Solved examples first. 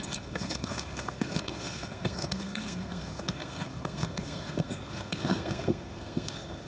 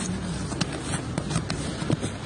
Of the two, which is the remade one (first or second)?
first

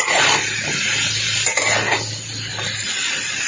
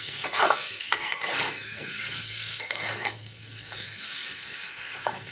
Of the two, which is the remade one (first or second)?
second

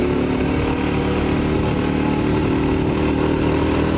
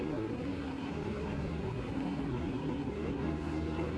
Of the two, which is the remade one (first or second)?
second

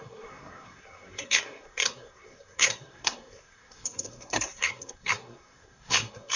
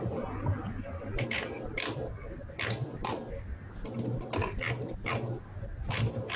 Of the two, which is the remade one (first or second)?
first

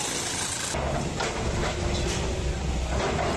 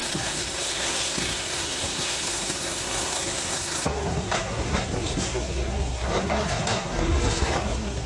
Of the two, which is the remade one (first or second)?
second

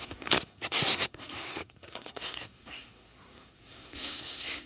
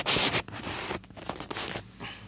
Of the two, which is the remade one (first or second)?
first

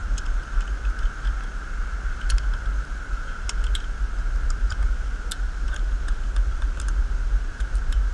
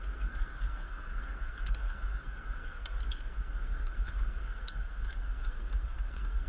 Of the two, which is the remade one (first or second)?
second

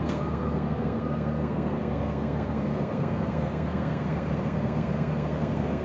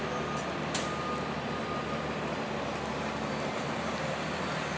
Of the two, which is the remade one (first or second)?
first